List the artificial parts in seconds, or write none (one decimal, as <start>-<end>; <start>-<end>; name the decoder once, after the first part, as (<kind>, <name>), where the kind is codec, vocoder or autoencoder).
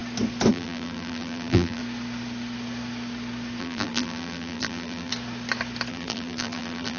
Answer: 0.5-1.8 (vocoder, BigVGAN v2); 3.6-5.1; 5.9-7.0